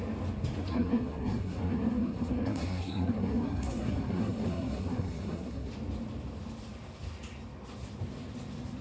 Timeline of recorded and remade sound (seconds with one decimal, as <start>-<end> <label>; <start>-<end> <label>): 0.0-0.7 recorded; 0.7-5.7 remade; 5.7-8.8 recorded